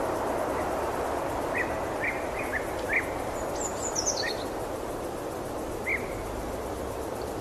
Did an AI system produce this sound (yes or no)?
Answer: no